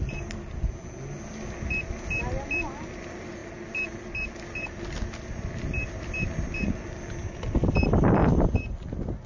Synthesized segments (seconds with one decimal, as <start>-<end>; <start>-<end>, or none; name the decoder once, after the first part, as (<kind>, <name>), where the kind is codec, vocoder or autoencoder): none